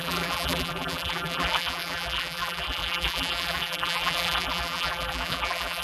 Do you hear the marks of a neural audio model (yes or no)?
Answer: yes